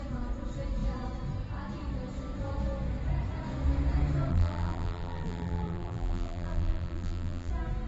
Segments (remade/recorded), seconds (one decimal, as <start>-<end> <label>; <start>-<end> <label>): 0.0-4.3 recorded; 4.3-7.5 remade; 7.5-7.9 recorded